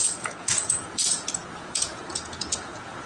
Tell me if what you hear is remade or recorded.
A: remade